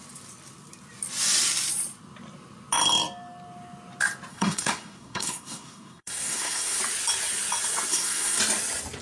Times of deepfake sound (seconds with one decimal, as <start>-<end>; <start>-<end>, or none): 4.3-6.8; 7.9-8.4